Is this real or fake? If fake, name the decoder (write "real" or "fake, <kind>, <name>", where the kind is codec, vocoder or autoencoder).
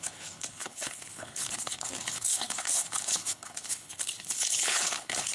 fake, codec, HILCodec